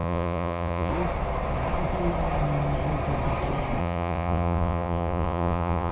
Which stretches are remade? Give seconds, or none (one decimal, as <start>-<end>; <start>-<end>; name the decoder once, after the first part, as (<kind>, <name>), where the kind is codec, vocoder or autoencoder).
0.0-0.9 (vocoder, Vocos); 3.8-5.9